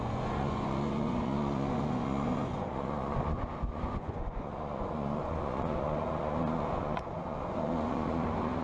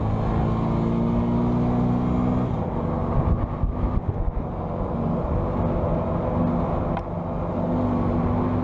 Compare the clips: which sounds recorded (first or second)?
second